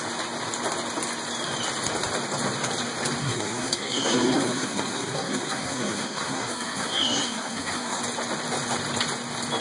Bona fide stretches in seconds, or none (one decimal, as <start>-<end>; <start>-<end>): 0.0-3.2; 8.0-9.6